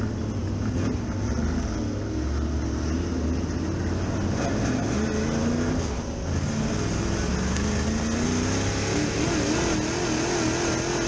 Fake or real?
real